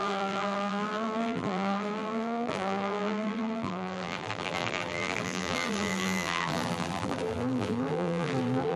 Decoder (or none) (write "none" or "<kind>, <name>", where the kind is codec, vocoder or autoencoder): vocoder, BigVGAN v2